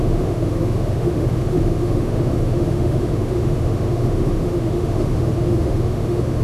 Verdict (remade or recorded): remade